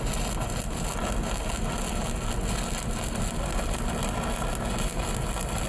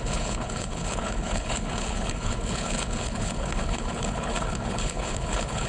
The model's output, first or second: second